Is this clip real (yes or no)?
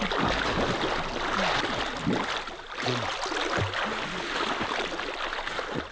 yes